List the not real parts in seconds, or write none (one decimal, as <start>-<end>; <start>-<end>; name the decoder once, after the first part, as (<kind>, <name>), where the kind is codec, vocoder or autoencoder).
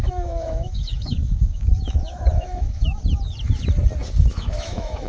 0.0-3.0 (autoencoder, DAC-VAE); 4.3-5.1